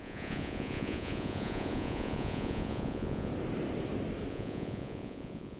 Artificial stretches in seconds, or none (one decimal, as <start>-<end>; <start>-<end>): 0.0-3.3; 4.3-5.6